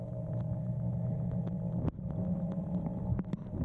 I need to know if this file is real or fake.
real